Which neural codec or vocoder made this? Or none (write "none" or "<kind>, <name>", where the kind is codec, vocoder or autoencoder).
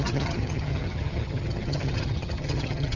vocoder, HiFi-GAN